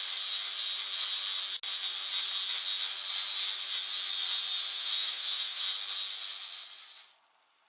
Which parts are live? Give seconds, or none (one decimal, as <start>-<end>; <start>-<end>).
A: 0.0-4.7; 5.7-7.7